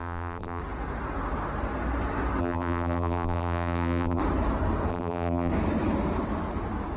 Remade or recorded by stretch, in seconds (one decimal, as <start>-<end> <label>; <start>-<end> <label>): 0.0-0.6 remade; 0.6-2.4 recorded; 2.4-4.2 remade; 4.2-4.9 recorded; 4.9-5.5 remade; 5.5-7.0 recorded